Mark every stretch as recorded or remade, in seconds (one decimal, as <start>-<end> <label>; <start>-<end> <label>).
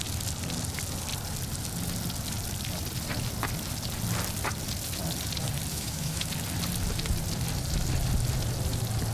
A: 0.0-5.7 recorded; 5.7-6.3 remade; 6.3-9.1 recorded